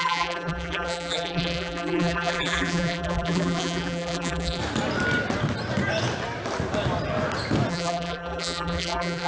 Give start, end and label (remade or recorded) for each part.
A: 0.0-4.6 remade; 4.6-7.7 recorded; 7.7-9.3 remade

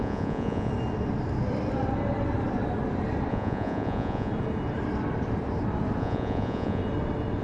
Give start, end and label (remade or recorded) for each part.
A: 0.0-0.7 remade; 0.7-3.3 recorded; 3.3-4.3 remade; 4.3-6.0 recorded; 6.0-6.8 remade; 6.8-7.4 recorded

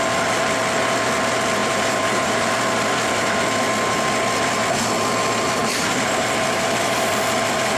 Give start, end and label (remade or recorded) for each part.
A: 0.0-1.6 recorded; 1.6-2.5 remade; 2.5-5.6 recorded; 5.6-7.1 remade; 7.1-7.8 recorded

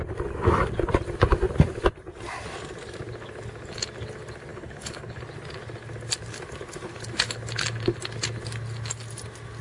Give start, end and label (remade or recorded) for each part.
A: 0.0-4.5 recorded; 4.5-5.2 remade; 5.2-9.6 recorded

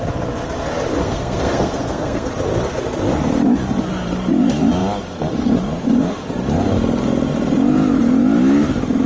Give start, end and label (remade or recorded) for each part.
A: 0.0-1.0 recorded; 1.0-2.3 remade; 2.3-9.1 recorded

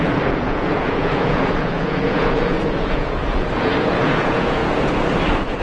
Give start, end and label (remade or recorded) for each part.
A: 0.0-5.6 remade

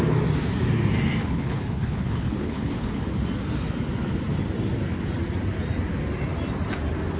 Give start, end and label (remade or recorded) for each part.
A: 0.0-1.2 recorded; 1.2-2.9 remade; 2.9-7.2 recorded

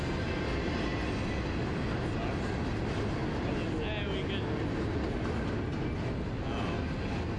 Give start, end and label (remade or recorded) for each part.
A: 0.0-7.4 recorded